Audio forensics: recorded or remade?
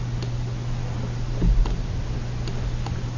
recorded